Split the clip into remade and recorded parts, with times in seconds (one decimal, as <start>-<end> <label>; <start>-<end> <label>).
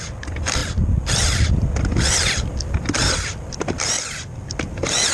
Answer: 0.0-5.1 recorded